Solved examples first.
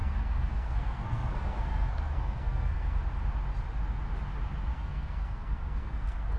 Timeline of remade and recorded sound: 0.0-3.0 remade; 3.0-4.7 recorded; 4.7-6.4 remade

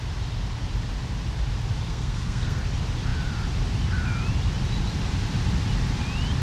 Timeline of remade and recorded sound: 0.0-1.9 recorded; 1.9-2.6 remade; 2.6-6.4 recorded

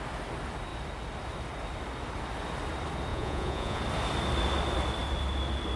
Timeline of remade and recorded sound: 0.0-3.1 recorded; 3.1-3.8 remade; 3.8-5.8 recorded

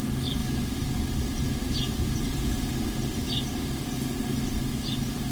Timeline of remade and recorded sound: 0.0-1.6 recorded; 1.6-2.7 remade; 2.7-5.3 recorded

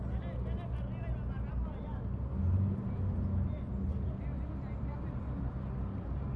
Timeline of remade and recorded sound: 0.0-6.4 recorded